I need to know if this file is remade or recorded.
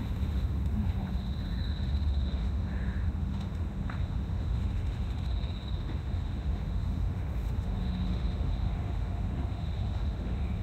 remade